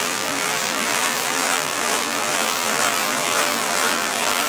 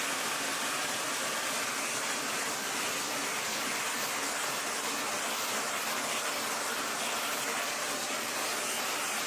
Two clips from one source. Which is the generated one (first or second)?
first